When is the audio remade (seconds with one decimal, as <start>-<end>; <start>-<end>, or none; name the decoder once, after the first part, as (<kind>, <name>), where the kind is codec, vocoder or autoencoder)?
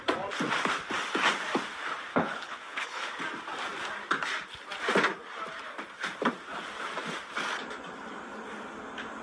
2.1-3.2 (codec, HILCodec)